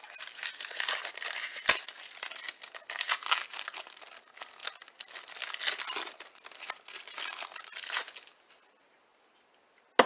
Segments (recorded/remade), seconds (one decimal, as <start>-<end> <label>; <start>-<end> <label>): 0.0-10.1 recorded